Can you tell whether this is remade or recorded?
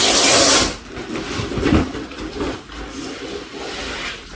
recorded